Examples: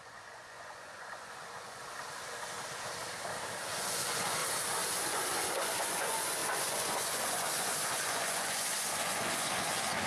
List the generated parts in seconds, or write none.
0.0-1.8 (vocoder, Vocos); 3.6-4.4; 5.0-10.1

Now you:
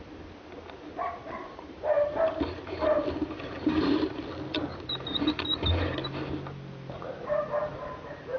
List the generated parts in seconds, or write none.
1.4-4.1 (vocoder, BigVGAN v2)

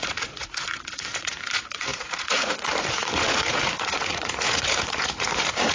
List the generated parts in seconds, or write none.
0.0-5.7 (vocoder, Vocos)